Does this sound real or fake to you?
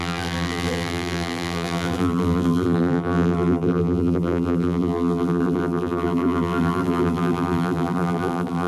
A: fake